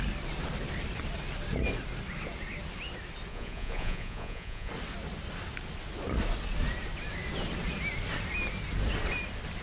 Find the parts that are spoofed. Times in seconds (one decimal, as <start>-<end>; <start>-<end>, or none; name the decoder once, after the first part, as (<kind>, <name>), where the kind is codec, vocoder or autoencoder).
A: 3.3-4.7 (vocoder, Vocos)